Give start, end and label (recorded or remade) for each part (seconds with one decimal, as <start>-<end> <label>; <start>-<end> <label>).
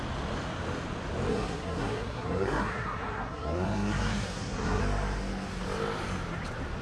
0.0-1.3 recorded; 1.3-4.8 remade; 4.8-6.8 recorded